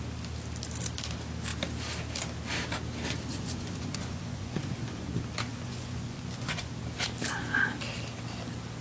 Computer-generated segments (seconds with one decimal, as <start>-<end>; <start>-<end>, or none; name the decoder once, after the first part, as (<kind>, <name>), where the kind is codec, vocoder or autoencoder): 3.3-5.1 (vocoder, Vocos); 5.5-6.7